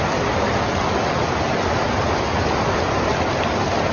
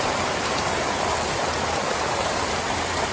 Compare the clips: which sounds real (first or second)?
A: first